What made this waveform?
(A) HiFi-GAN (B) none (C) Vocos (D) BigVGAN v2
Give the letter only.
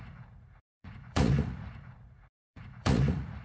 C